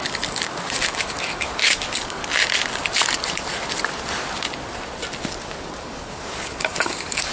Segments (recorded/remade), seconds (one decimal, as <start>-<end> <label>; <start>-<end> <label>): 0.0-2.2 remade; 2.2-5.8 recorded; 5.8-7.3 remade